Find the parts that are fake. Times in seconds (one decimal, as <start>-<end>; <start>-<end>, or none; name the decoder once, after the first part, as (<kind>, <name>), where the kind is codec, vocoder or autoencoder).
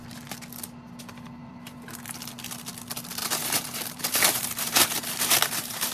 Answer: 1.4-1.9 (vocoder, BigVGAN v2); 3.2-5.9